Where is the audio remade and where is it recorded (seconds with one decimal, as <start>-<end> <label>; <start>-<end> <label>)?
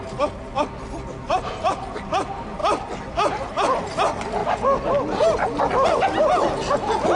0.0-7.2 recorded